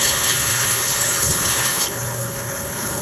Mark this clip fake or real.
fake